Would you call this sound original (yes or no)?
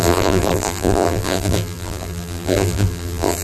no